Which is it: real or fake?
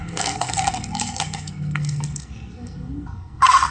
fake